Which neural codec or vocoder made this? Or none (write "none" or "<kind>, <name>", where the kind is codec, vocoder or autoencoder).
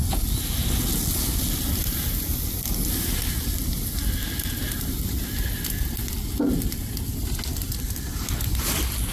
none